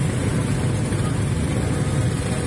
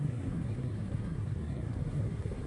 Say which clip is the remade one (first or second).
second